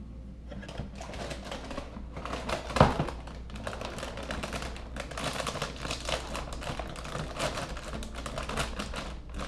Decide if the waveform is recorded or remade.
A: recorded